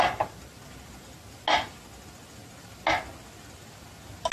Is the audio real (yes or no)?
yes